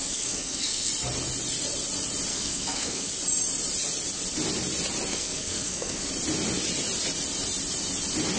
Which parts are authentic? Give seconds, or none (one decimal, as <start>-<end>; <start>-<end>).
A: 0.9-2.3; 3.1-5.1; 6.1-8.4